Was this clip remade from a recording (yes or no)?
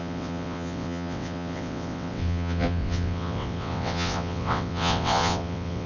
yes